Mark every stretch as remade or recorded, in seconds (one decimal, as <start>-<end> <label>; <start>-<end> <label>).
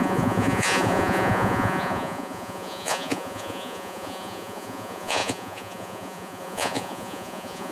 0.0-7.7 remade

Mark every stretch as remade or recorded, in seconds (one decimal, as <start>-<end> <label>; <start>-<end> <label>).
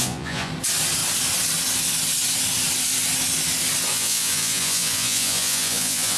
0.0-0.5 remade; 0.5-3.9 recorded; 3.9-6.2 remade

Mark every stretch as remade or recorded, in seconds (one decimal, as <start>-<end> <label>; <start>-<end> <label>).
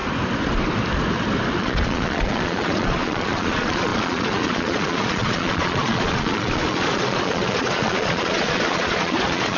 0.0-1.6 recorded; 1.6-9.6 remade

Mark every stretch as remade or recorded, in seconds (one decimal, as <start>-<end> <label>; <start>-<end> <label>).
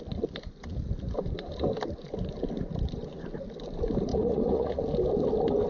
0.0-4.1 recorded; 4.1-4.8 remade; 4.8-5.7 recorded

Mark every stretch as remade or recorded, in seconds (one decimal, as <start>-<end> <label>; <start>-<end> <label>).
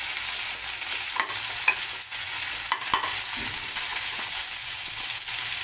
0.0-1.7 recorded; 1.7-2.5 remade; 2.5-3.9 recorded; 3.9-4.9 remade; 4.9-5.6 recorded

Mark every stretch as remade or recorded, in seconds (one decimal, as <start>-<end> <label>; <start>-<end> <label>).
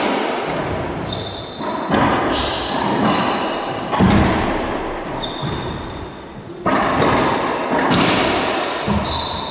0.0-9.5 recorded